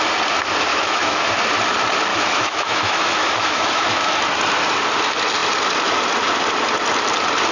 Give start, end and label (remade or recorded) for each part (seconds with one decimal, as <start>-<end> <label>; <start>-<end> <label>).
0.0-0.7 recorded; 0.7-1.3 remade; 1.3-2.1 recorded; 2.1-4.1 remade; 4.1-7.5 recorded